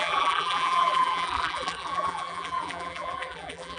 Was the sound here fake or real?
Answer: fake